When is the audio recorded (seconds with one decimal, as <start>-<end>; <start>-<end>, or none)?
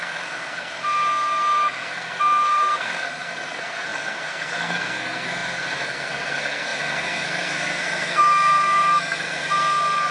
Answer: none